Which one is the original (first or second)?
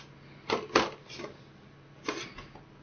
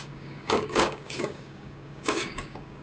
first